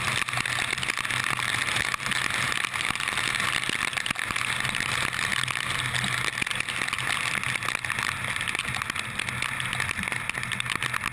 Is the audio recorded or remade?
recorded